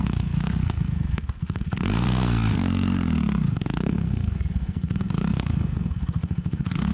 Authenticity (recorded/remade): remade